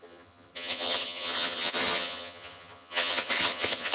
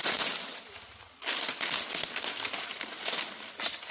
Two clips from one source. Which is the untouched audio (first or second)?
second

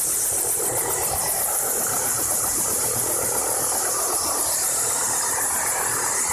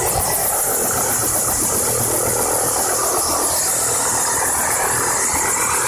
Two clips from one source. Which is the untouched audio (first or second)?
second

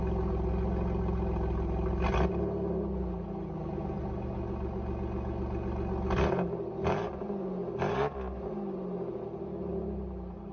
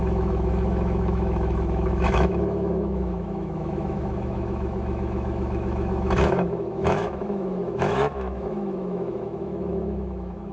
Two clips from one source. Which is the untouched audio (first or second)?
first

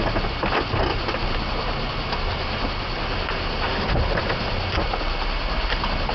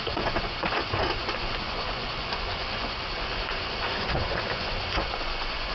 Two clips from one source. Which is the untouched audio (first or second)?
first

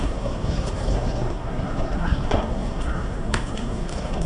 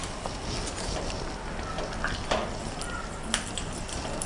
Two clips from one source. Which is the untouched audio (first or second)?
second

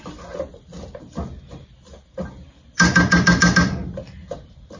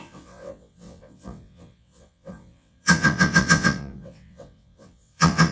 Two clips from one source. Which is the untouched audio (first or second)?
first